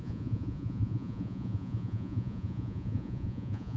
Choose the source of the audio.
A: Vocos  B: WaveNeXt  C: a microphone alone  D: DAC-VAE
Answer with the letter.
A